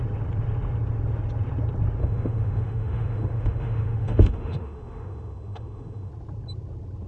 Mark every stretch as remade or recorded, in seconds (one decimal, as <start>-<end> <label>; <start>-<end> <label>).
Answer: 0.0-2.0 recorded; 2.0-6.1 remade; 6.1-7.1 recorded